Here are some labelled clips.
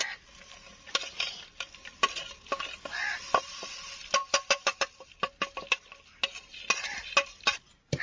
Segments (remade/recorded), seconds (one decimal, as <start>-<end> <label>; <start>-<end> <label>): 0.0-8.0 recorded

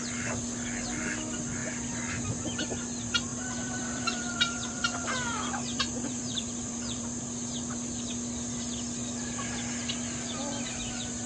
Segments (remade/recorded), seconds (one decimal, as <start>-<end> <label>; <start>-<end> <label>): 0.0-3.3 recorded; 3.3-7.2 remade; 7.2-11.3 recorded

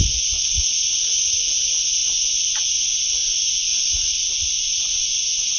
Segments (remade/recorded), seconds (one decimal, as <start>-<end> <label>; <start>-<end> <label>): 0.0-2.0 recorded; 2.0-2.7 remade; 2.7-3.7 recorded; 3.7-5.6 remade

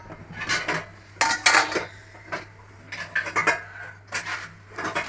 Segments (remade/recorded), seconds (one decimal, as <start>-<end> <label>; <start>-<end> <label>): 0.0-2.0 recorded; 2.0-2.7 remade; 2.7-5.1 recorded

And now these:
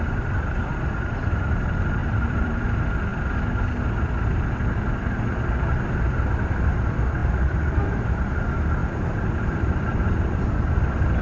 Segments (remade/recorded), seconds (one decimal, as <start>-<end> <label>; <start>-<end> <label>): 0.0-2.0 recorded; 2.0-2.6 remade; 2.6-7.2 recorded; 7.2-8.4 remade; 8.4-8.8 recorded; 8.8-9.8 remade; 9.8-11.2 recorded